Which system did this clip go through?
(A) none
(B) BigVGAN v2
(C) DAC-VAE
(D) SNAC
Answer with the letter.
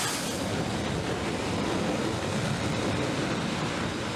B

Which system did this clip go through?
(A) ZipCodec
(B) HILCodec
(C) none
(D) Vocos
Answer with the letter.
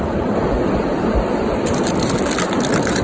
C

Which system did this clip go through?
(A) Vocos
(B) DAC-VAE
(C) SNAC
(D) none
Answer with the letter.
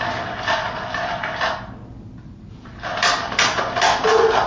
D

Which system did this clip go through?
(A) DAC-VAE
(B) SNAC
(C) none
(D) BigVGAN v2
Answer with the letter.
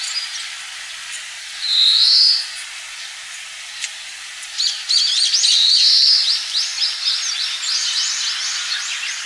C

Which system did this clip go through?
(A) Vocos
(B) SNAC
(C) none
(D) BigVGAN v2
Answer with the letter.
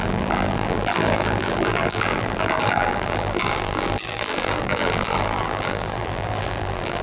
D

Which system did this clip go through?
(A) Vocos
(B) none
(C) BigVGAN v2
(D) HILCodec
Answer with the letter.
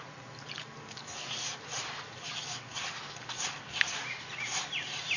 C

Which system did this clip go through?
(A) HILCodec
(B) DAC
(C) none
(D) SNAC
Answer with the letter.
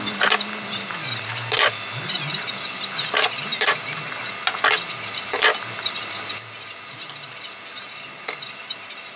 C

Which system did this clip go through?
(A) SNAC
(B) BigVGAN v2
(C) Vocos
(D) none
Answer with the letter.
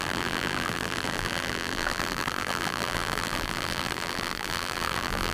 B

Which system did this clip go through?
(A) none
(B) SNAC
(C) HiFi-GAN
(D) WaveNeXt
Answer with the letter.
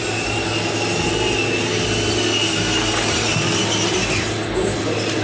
A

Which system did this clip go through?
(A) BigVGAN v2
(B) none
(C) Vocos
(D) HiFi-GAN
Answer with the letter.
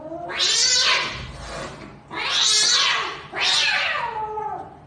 B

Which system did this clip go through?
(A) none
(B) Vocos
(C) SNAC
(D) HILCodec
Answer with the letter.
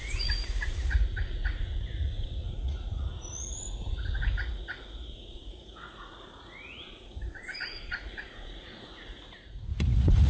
B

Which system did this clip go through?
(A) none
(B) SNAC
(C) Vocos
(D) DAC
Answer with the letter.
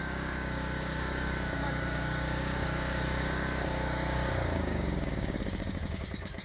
D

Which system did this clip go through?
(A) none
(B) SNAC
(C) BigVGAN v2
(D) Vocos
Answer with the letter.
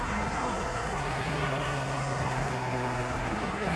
B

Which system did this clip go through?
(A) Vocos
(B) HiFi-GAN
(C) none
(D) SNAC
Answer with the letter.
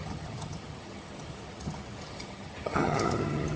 B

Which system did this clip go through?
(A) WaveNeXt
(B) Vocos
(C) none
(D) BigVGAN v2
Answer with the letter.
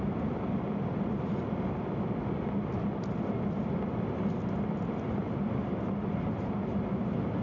C